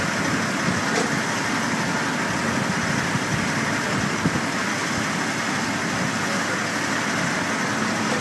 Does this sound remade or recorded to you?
recorded